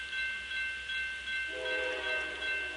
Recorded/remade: recorded